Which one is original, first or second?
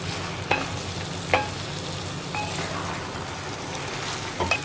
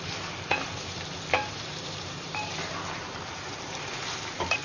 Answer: first